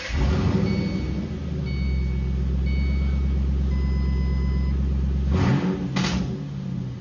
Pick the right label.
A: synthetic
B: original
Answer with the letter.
B